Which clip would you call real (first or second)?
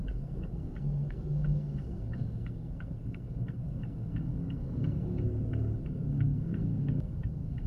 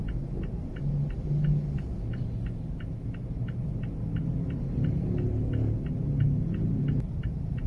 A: second